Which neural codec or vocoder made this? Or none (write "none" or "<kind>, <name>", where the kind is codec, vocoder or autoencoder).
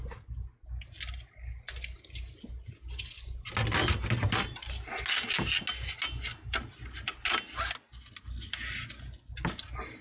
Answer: none